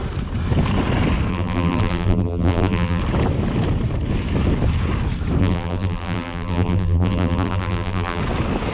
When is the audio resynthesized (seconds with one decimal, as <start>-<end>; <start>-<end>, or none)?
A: 1.3-3.0; 5.4-8.2